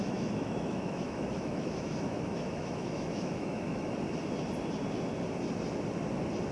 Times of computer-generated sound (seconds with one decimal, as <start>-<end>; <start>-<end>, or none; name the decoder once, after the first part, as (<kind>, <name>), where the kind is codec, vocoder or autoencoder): 0.0-3.9 (autoencoder, DAC-VAE)